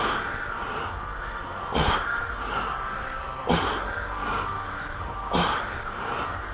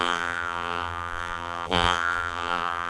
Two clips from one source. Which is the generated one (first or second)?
second